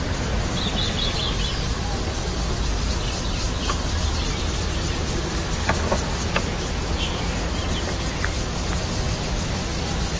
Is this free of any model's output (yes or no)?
yes